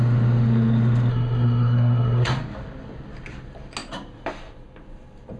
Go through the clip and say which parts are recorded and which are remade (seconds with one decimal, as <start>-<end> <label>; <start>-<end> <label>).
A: 0.0-1.1 recorded; 1.1-2.3 remade; 2.3-5.4 recorded